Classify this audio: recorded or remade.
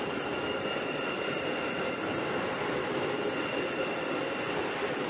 recorded